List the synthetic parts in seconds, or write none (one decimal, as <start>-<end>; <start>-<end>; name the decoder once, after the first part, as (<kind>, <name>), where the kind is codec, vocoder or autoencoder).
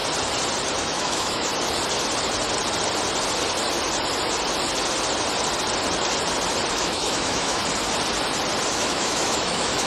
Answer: 0.8-1.5 (autoencoder, DAC-VAE); 6.7-7.6; 8.7-9.9